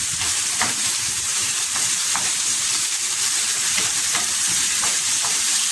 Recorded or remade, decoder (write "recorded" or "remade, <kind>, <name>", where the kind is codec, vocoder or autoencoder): remade, vocoder, BigVGAN v2